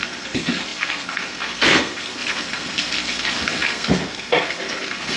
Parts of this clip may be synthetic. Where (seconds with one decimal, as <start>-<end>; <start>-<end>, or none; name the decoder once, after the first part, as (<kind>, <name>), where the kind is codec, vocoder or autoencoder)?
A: 0.0-5.2 (codec, SNAC)